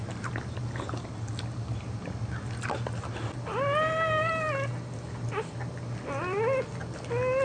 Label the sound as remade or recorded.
recorded